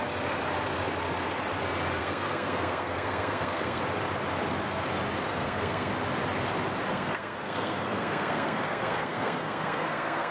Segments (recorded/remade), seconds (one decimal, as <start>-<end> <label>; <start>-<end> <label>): 0.0-2.0 recorded; 2.0-3.8 remade; 3.8-5.3 recorded; 5.3-5.9 remade; 5.9-6.9 recorded; 6.9-10.3 remade